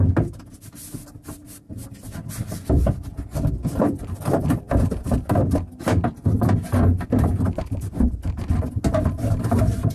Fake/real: real